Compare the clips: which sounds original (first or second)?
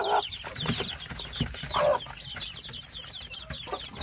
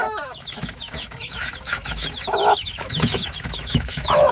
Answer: first